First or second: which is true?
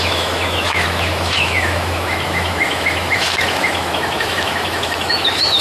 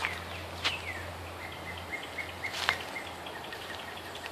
second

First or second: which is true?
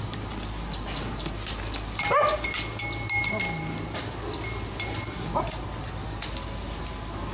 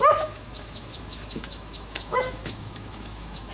first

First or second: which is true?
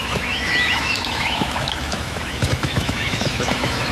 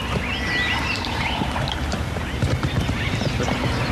second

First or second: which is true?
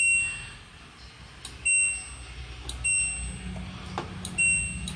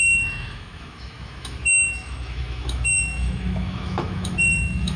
first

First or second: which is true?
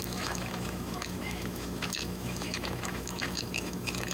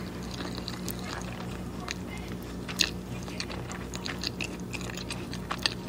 second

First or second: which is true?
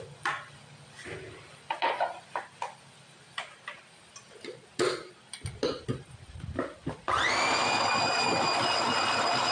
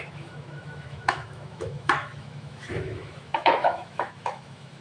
first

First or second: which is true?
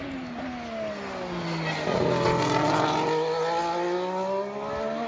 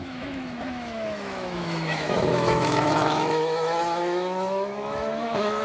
first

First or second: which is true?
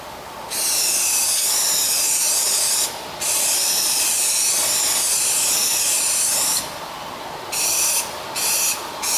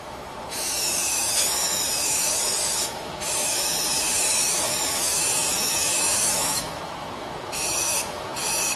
first